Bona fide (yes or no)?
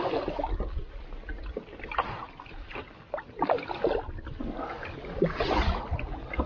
yes